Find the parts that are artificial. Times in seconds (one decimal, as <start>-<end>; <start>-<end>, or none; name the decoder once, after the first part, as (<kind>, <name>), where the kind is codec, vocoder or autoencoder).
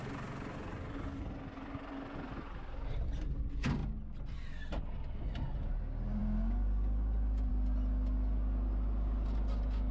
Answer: none